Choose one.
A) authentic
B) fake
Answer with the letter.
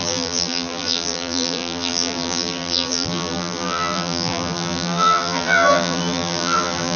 B